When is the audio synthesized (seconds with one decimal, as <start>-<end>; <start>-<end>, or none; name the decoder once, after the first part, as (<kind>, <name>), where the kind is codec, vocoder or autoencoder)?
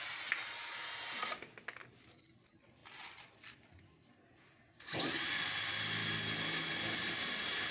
none